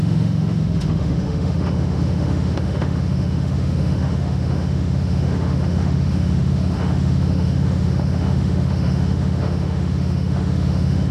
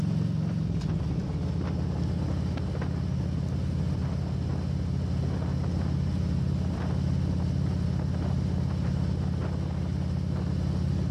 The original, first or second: second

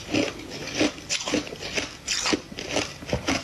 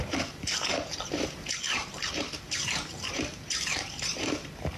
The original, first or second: first